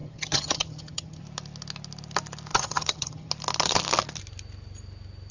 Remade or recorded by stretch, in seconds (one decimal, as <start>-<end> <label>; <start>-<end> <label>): 0.0-1.2 remade; 1.2-2.5 recorded; 2.5-3.3 remade; 3.3-5.3 recorded